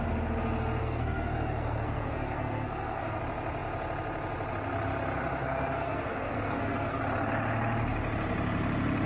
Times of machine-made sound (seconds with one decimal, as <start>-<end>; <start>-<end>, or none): 0.8-3.2; 5.4-7.0